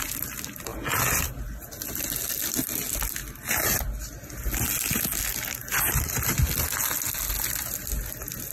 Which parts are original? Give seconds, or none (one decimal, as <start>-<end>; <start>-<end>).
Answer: 0.0-8.5